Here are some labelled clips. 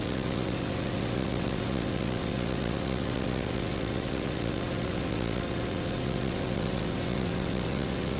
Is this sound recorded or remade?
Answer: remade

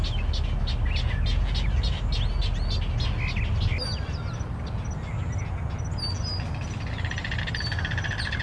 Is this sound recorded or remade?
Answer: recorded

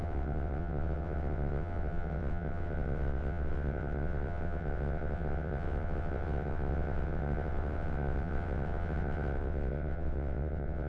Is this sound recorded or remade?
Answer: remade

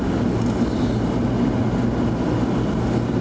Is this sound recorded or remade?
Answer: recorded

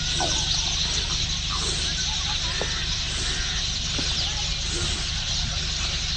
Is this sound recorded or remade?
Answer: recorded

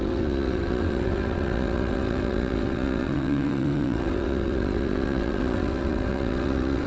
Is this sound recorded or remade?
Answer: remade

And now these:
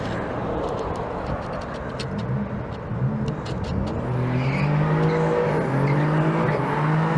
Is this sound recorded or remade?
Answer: recorded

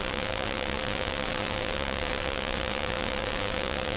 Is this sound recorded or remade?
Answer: remade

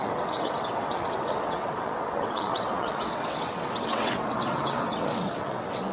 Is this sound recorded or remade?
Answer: remade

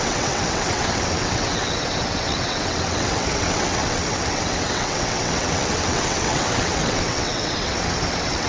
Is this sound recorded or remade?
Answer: remade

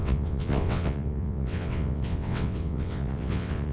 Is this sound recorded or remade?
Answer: remade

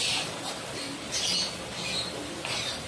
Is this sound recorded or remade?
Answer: recorded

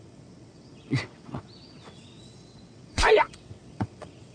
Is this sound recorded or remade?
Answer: remade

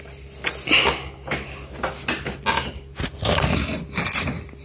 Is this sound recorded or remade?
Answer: recorded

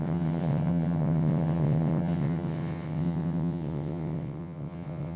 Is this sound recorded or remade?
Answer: remade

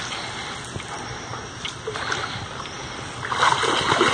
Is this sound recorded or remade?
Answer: recorded